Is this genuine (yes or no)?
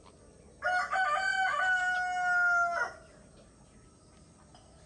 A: yes